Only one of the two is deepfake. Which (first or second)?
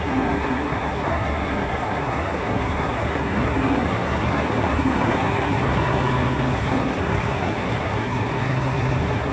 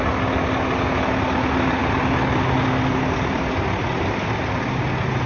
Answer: first